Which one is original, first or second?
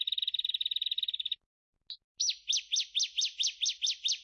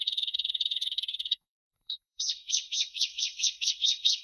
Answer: first